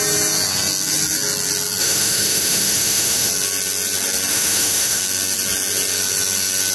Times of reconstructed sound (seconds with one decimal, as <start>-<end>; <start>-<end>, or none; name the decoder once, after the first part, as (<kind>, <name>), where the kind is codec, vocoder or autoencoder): 1.8-3.3 (autoencoder, DAC-VAE); 4.3-5.0